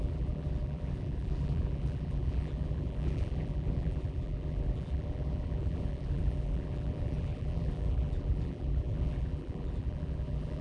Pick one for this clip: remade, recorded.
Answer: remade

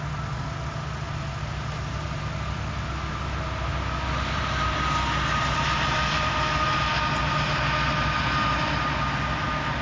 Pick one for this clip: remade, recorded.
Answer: recorded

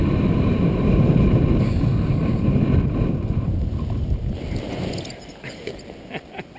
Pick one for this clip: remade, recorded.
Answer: recorded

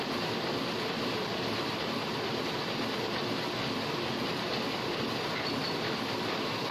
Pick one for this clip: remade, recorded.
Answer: recorded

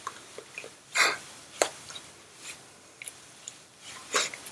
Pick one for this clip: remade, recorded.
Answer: remade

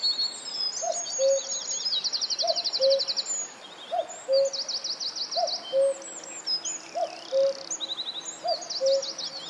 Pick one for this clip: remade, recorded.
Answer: recorded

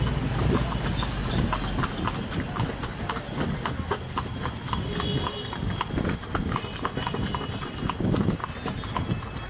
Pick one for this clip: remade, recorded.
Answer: recorded